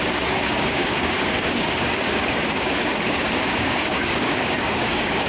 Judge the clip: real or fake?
fake